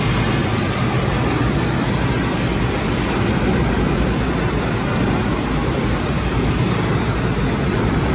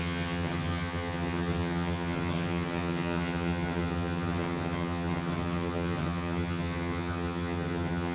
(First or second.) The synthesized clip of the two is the second